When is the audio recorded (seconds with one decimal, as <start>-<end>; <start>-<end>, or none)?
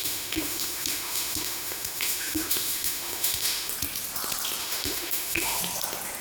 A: 3.7-4.6; 5.6-6.2